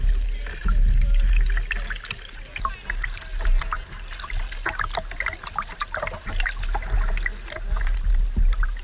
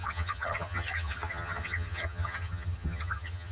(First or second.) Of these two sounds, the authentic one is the first